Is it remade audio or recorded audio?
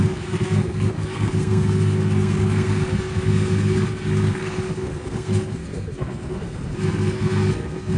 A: remade